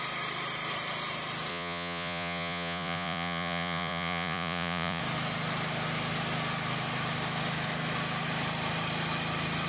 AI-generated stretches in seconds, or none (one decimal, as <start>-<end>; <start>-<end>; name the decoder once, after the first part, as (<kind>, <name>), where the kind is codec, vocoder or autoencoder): 1.5-5.0 (vocoder, Vocos)